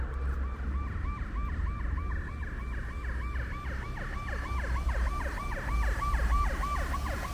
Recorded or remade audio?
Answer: recorded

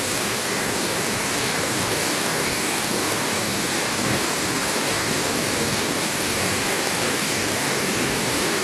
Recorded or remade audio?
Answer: remade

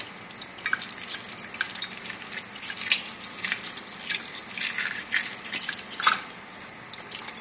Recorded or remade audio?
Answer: recorded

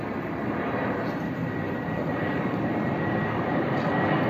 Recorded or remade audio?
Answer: remade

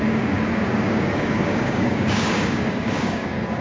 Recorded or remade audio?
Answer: remade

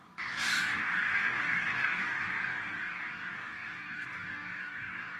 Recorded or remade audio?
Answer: remade